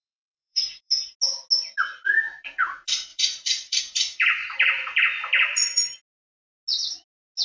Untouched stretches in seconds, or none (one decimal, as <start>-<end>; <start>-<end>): 0.9-3.1; 3.8-4.3; 5.0-7.4